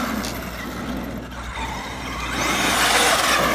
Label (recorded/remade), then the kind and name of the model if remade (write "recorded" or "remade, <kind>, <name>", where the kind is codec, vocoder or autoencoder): recorded